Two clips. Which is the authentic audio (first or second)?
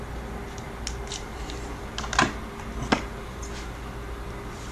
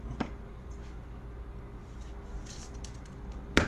first